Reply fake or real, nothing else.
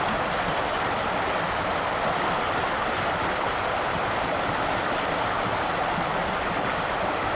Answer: real